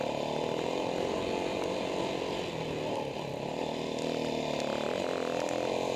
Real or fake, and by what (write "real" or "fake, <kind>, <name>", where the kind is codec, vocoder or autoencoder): real